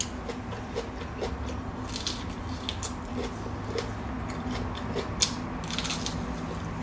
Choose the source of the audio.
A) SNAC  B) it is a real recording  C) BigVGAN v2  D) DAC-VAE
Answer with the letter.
B